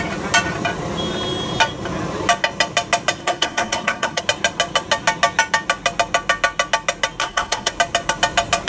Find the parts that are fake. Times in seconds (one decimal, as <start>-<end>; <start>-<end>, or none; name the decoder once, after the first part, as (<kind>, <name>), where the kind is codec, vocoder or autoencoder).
3.2-4.2 (codec, SNAC); 7.2-7.7